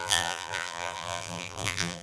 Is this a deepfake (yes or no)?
yes